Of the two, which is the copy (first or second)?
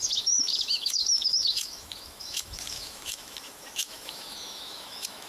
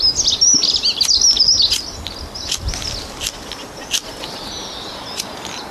first